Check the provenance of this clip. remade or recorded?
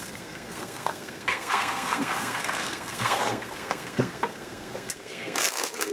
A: remade